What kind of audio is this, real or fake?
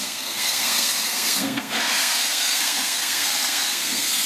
fake